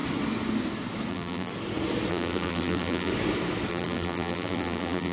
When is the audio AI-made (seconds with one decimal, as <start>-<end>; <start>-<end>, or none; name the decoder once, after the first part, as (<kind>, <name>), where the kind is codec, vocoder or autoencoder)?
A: 1.1-1.5 (vocoder, BigVGAN v2); 2.1-3.1; 3.7-5.1